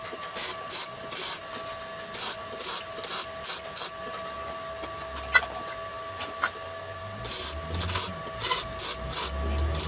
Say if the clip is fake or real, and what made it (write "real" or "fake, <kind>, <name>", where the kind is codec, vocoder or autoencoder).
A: real